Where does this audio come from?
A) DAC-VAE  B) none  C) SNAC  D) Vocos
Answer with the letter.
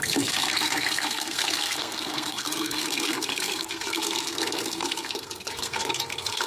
C